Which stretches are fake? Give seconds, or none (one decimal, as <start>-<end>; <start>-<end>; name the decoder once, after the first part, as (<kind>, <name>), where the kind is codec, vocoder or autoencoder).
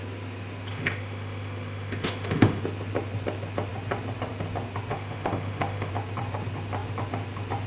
0.7-2.6 (autoencoder, DAC-VAE); 4.9-5.9